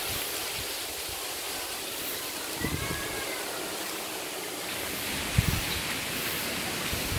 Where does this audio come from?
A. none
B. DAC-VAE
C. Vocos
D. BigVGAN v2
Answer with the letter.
A